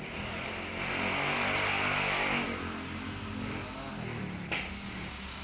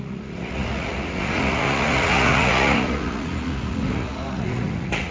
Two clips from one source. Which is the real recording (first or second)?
first